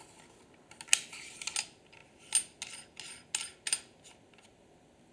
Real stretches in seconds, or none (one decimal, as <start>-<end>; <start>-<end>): 0.0-5.1